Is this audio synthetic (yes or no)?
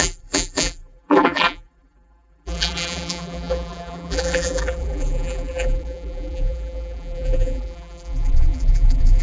yes